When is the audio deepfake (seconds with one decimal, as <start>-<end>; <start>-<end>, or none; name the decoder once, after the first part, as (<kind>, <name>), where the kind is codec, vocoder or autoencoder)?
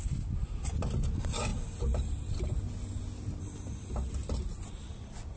none